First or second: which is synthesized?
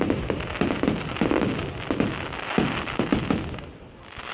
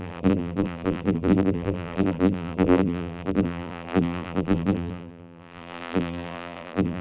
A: second